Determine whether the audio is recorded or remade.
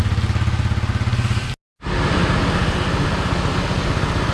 recorded